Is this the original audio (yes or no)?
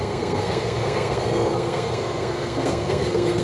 no